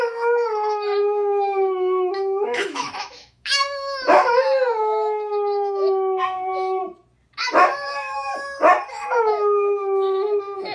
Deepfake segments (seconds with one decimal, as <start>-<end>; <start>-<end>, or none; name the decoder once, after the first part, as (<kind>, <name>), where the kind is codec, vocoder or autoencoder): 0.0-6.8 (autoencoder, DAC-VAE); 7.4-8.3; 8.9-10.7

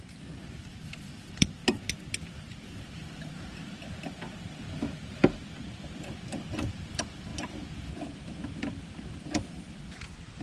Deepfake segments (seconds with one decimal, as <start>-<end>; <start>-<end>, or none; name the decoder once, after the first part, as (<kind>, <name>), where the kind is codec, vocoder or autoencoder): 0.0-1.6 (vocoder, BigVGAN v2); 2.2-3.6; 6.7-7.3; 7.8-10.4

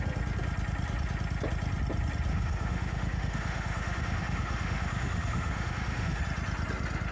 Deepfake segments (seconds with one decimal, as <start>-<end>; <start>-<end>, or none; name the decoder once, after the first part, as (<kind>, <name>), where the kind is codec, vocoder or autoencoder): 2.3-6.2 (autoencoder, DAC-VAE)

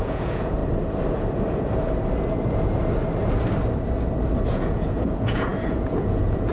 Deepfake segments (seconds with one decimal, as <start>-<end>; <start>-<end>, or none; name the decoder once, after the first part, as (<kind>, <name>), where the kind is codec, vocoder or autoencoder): 0.0-0.6 (vocoder, Vocos); 4.5-6.5

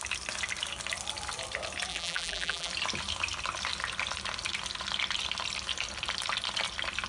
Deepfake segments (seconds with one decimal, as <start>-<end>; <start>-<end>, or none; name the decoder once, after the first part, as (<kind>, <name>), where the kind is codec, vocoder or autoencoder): 1.9-2.7 (vocoder, BigVGAN v2)

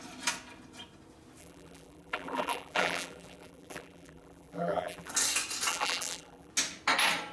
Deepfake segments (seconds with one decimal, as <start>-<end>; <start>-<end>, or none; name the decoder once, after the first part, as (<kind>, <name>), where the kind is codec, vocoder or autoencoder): 1.4-5.1 (vocoder, BigVGAN v2); 5.7-6.5